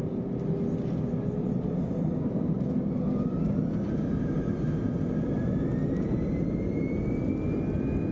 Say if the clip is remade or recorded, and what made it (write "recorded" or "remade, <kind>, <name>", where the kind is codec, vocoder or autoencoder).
recorded